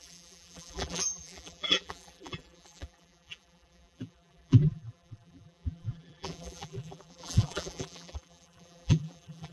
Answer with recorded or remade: remade